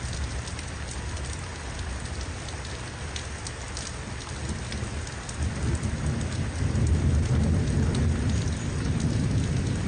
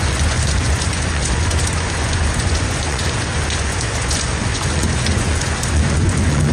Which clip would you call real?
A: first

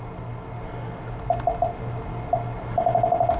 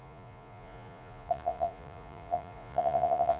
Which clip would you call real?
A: first